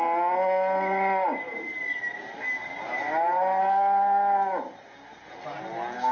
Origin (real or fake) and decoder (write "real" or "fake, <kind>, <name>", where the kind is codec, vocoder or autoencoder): real